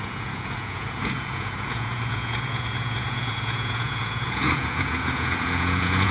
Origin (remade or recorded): remade